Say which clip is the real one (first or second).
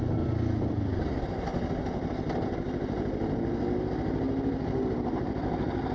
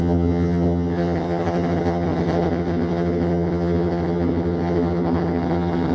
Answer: first